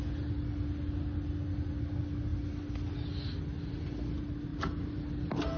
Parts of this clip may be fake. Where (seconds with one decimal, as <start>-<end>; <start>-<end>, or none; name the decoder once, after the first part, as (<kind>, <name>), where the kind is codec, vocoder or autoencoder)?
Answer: 4.5-5.0 (vocoder, BigVGAN v2)

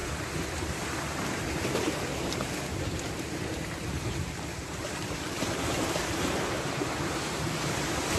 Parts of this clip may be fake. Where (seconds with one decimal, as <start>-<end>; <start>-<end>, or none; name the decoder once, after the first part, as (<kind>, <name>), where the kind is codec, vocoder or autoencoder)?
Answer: 0.0-2.1 (vocoder, BigVGAN v2); 2.7-8.2

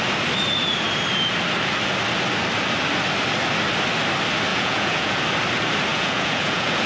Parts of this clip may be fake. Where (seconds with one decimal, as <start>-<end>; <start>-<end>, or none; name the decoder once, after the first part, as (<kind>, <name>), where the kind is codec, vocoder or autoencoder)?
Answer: 4.5-5.2 (vocoder, Vocos); 5.9-6.9